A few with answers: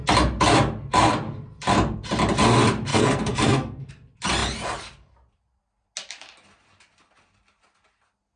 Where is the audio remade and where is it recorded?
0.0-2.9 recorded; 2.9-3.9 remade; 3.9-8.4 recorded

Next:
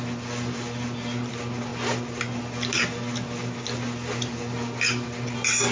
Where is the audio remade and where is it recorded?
0.0-5.7 recorded

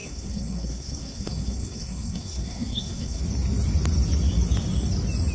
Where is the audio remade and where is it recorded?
0.0-3.2 remade; 3.2-5.3 recorded

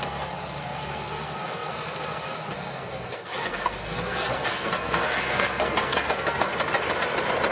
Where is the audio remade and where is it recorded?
0.0-6.5 remade; 6.5-7.5 recorded